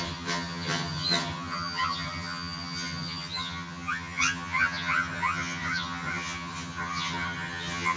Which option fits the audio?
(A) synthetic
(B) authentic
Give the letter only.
A